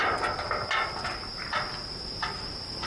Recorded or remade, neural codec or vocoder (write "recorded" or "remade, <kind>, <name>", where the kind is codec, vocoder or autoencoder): recorded